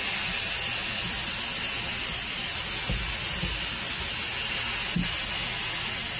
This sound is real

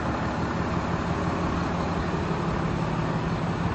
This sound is real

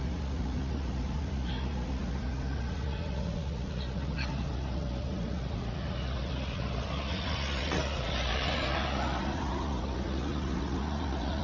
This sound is fake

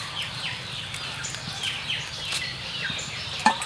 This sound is real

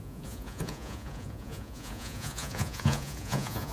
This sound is fake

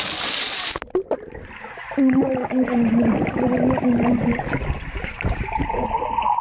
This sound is real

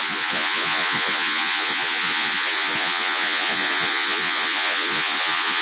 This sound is fake